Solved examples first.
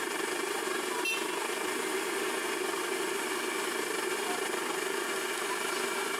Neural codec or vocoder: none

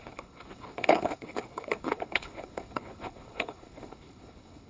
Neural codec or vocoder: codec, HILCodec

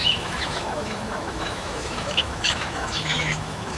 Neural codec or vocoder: autoencoder, DAC-VAE